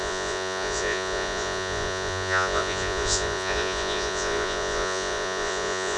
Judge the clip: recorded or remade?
remade